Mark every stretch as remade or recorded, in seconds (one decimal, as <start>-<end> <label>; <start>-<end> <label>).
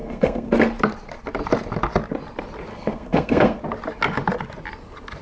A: 0.0-0.5 remade; 0.5-2.7 recorded; 2.7-3.6 remade; 3.6-5.2 recorded